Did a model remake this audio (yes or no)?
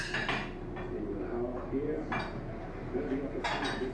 no